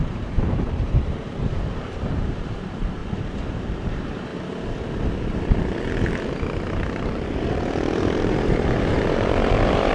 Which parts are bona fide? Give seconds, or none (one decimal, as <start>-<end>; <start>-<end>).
3.0-3.5; 4.3-6.7